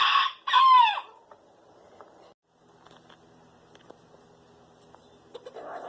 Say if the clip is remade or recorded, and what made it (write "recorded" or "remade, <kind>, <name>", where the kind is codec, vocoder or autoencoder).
recorded